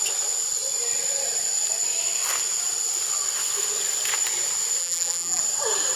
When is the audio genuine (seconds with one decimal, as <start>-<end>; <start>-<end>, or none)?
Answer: 0.0-4.8; 5.4-6.0